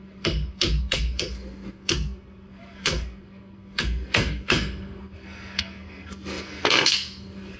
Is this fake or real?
fake